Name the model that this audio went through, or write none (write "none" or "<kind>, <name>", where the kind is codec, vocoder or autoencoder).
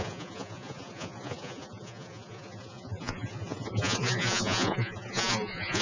vocoder, Vocos